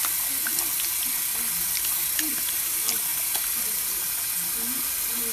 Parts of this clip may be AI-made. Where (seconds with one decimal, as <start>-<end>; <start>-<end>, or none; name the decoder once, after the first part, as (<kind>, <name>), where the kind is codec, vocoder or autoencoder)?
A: none